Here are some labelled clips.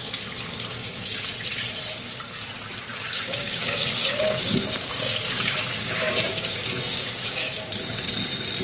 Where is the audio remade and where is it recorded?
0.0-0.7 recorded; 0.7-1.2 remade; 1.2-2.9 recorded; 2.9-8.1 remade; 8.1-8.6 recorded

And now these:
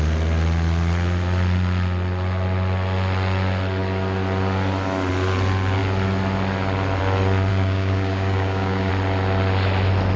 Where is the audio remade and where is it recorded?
0.0-7.5 recorded; 7.5-8.9 remade; 8.9-10.2 recorded

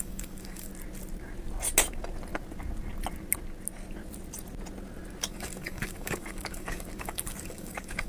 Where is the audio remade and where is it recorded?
0.0-0.7 remade; 0.7-5.2 recorded; 5.2-8.1 remade

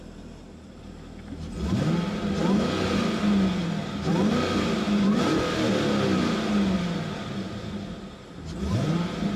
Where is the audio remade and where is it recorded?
0.0-9.4 recorded

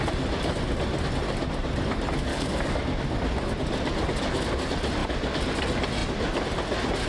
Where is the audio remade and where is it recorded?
0.0-2.3 recorded; 2.3-2.8 remade; 2.8-7.1 recorded

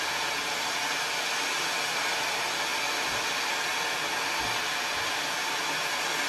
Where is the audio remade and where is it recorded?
0.0-6.3 recorded

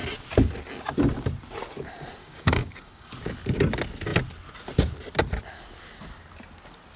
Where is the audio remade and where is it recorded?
0.0-2.2 recorded; 2.2-3.1 remade; 3.1-7.0 recorded